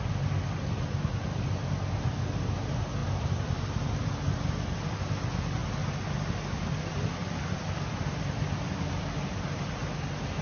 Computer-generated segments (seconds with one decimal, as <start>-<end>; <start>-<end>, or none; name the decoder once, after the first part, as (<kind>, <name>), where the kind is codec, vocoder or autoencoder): none